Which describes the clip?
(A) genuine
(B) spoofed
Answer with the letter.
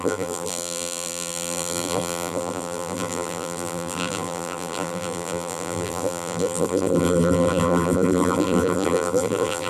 B